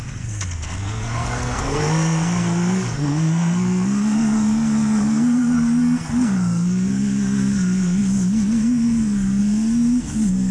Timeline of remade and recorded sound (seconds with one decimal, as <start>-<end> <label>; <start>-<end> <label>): 0.0-10.5 remade